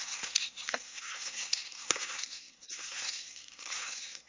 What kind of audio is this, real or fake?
fake